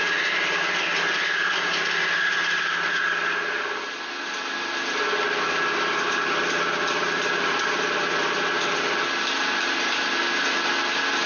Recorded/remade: recorded